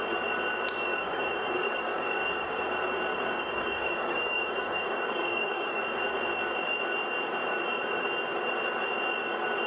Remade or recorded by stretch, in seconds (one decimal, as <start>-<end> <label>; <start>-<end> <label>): 0.0-0.9 recorded; 0.9-2.6 remade; 2.6-3.1 recorded; 3.1-5.8 remade; 5.8-9.7 recorded